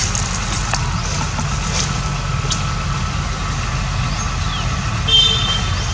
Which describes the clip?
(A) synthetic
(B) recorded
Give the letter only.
B